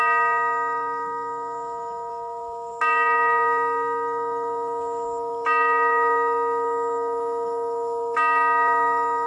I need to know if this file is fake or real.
real